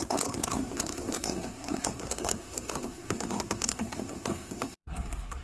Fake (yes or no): yes